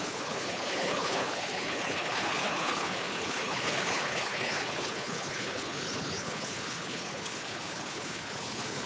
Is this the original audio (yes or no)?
no